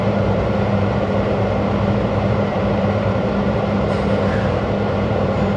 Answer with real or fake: fake